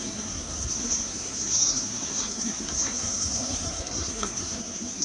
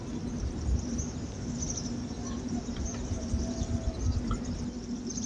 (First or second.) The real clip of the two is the second